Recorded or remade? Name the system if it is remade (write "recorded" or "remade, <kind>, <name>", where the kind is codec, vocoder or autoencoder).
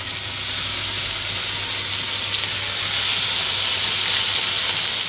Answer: recorded